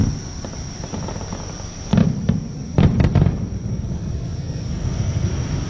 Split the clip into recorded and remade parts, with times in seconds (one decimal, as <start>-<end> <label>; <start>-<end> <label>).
0.0-3.7 recorded; 3.7-5.3 remade; 5.3-5.7 recorded